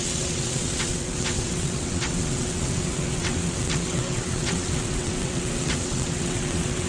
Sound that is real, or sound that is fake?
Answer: fake